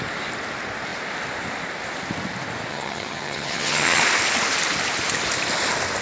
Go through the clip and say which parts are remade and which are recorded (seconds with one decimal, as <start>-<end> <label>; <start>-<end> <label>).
0.0-2.7 recorded; 2.7-4.0 remade; 4.0-6.0 recorded